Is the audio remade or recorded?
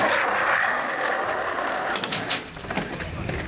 recorded